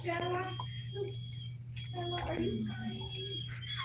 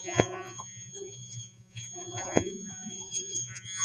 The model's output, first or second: second